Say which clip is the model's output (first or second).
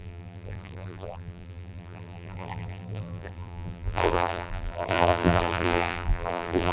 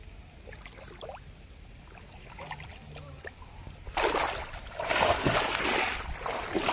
first